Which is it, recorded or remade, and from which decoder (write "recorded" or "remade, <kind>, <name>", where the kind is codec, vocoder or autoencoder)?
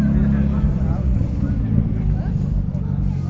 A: recorded